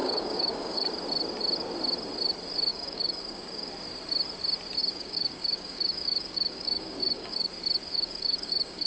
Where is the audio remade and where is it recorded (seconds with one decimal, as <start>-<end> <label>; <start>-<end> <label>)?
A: 0.0-0.9 remade; 0.9-2.7 recorded; 2.7-3.7 remade; 3.7-4.8 recorded; 4.8-7.5 remade; 7.5-7.9 recorded; 7.9-8.9 remade